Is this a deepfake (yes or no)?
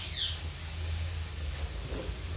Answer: no